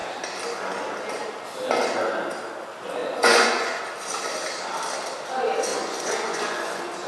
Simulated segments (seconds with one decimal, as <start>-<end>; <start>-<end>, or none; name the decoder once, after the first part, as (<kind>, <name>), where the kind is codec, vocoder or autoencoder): 3.0-3.8 (vocoder, Vocos); 5.7-7.1